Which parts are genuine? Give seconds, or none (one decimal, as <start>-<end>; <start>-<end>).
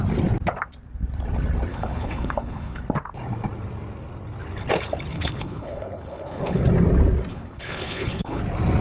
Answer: 0.0-1.7; 2.8-5.1; 6.6-7.3; 8.4-8.8